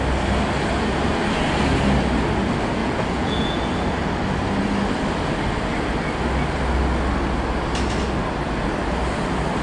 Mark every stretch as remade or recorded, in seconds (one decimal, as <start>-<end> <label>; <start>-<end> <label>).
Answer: 0.0-2.8 recorded; 2.8-3.6 remade; 3.6-9.6 recorded